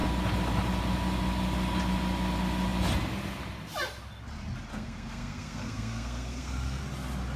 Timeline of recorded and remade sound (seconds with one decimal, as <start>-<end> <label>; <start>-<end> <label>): 0.0-4.7 recorded; 4.7-6.8 remade; 6.8-7.4 recorded